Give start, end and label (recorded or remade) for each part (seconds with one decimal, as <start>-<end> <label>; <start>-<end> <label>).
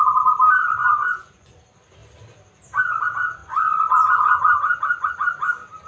0.0-0.8 recorded; 0.8-1.6 remade; 1.6-3.4 recorded; 3.4-5.1 remade; 5.1-5.9 recorded